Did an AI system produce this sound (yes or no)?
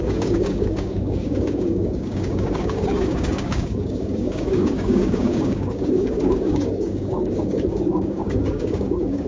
yes